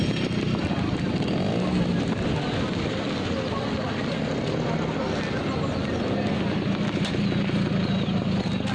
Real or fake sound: real